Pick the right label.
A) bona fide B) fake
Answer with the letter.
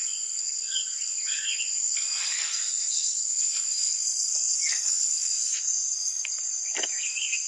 B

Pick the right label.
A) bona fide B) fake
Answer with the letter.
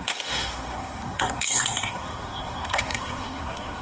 B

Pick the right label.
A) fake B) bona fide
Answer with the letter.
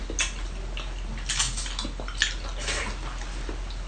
B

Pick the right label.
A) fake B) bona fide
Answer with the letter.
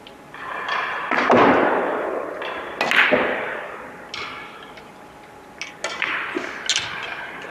B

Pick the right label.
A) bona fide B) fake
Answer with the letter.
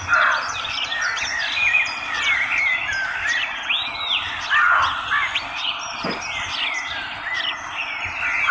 A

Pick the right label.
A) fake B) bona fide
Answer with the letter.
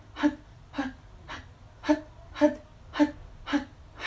B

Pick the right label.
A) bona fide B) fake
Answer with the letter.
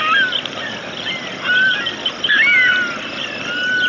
A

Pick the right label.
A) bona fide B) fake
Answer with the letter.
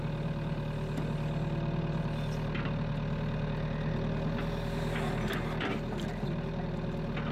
A